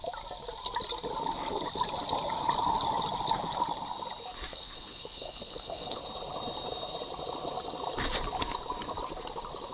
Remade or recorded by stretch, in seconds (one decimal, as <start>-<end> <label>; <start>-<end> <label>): 0.0-4.5 recorded; 4.5-6.0 remade; 6.0-9.7 recorded